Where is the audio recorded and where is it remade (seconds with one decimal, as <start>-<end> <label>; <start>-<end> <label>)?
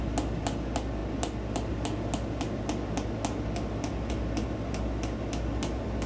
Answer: 0.0-6.1 recorded